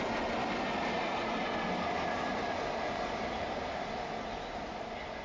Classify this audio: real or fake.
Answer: real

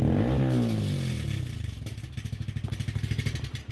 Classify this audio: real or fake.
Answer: real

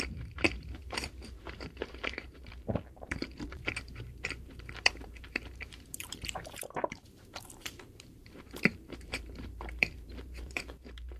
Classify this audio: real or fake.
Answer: fake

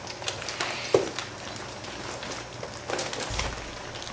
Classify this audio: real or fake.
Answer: real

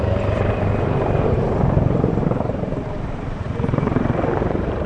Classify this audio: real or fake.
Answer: fake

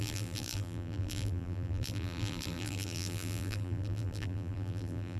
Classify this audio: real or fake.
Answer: fake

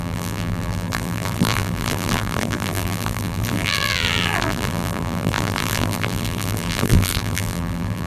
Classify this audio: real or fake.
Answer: fake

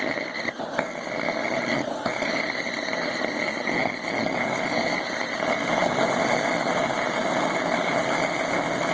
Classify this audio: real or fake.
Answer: real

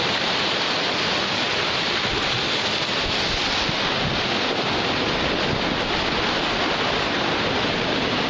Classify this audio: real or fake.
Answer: real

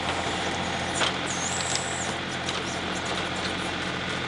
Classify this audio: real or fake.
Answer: real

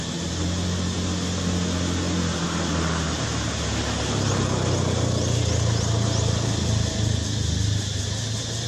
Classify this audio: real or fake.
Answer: real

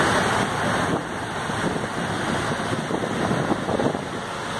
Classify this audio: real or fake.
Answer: real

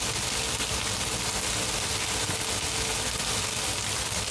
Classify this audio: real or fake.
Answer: real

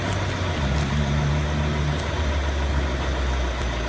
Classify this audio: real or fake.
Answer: real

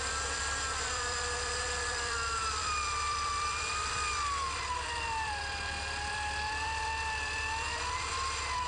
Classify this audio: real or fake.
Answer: fake